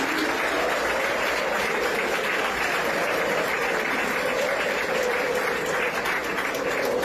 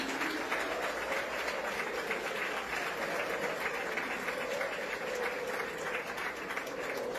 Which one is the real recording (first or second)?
second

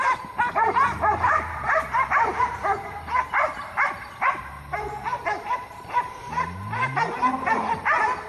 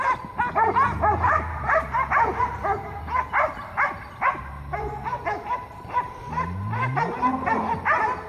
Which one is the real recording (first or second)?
second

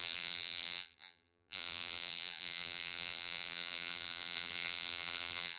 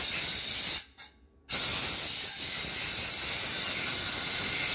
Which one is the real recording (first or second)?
second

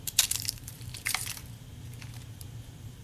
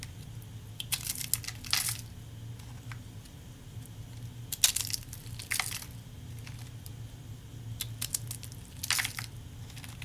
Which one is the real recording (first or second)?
second